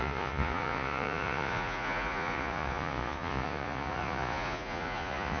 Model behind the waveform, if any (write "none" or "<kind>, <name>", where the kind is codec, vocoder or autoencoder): vocoder, Vocos